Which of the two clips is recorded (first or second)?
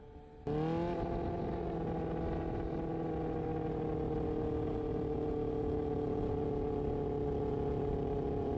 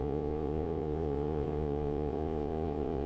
first